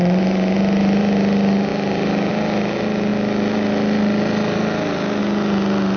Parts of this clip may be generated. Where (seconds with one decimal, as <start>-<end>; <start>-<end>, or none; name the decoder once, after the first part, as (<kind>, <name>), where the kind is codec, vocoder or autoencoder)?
none